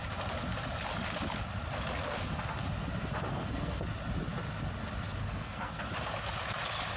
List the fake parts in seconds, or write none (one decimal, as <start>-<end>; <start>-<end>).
3.3-3.8; 5.2-5.8